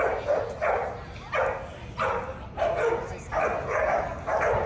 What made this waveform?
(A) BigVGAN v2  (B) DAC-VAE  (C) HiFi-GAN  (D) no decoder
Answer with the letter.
D